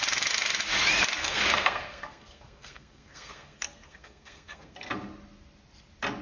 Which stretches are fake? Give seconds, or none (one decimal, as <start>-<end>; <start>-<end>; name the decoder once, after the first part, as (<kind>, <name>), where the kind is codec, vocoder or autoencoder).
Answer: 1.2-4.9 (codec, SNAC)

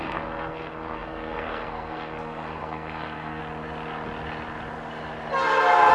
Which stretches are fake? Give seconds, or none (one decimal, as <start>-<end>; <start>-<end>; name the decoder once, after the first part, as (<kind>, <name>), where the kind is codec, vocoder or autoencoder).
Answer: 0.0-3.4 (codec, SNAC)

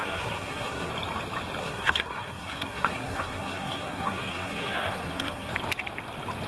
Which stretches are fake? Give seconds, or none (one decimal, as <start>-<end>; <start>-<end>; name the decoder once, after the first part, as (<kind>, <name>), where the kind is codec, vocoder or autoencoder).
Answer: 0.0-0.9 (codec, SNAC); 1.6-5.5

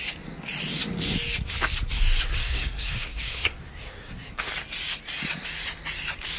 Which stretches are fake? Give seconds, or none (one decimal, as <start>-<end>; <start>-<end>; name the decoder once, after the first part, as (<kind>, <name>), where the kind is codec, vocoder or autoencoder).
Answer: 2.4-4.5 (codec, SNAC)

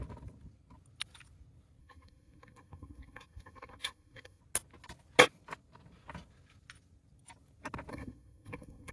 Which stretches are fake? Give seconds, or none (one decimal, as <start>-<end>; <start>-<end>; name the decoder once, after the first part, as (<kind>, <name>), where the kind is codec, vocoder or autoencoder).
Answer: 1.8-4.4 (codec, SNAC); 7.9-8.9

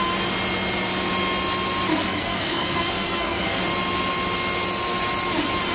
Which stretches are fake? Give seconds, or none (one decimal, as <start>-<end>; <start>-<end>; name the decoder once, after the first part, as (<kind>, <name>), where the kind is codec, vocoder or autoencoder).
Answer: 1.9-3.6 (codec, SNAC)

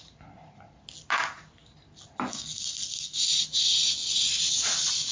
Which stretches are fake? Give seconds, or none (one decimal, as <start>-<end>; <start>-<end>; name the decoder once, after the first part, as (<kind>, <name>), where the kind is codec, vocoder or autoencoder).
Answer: 2.3-3.3 (codec, SNAC)